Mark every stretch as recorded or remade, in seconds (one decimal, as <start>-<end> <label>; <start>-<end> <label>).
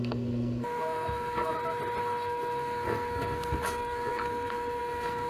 0.0-1.5 remade; 1.5-2.0 recorded; 2.0-5.3 remade